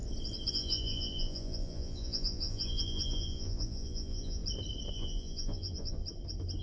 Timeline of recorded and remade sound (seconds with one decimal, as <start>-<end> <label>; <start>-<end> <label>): 0.0-0.5 recorded; 0.5-4.4 remade; 4.4-4.9 recorded; 4.9-6.0 remade; 6.0-6.6 recorded